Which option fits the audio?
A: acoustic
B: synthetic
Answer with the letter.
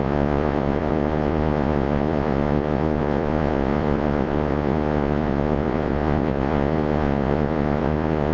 B